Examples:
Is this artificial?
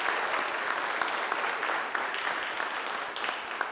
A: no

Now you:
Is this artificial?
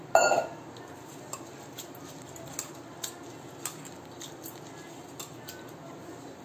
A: no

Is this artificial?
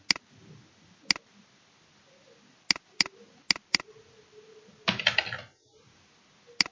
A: no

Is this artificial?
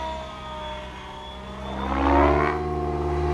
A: no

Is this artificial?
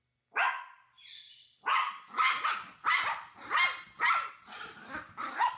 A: no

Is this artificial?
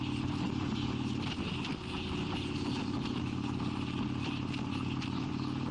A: no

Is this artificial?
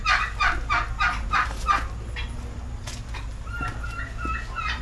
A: no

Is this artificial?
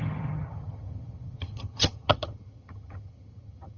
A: yes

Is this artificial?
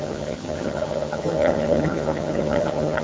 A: yes